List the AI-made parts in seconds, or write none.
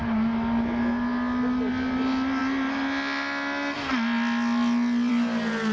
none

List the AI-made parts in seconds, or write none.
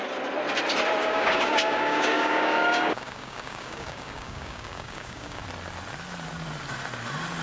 1.0-5.4 (codec, DAC)